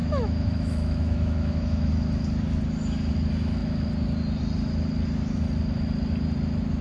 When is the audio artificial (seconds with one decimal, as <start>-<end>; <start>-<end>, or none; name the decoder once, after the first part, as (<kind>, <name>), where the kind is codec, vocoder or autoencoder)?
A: 0.0-1.9 (autoencoder, DAC-VAE)